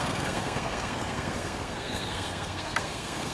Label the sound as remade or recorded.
remade